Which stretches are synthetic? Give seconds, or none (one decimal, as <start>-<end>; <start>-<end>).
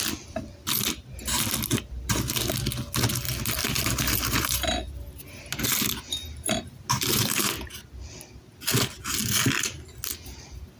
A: 3.6-7.5